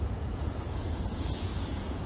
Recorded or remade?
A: remade